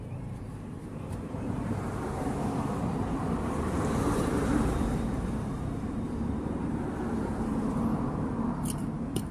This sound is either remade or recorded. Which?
remade